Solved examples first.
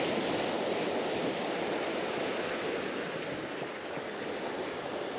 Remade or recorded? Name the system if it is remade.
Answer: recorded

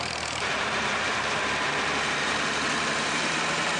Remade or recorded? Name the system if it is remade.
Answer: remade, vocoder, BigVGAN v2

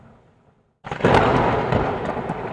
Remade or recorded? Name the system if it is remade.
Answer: recorded